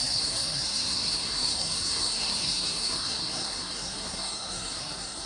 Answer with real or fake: fake